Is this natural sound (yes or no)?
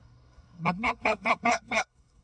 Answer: no